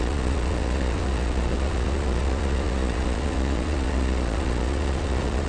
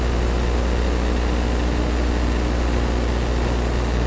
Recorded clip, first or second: second